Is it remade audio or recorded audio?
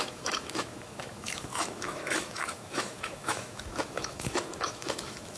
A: remade